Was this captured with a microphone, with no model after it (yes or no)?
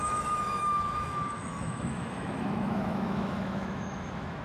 no